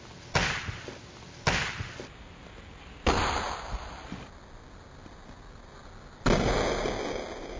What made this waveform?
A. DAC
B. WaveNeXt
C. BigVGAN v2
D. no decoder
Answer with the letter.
D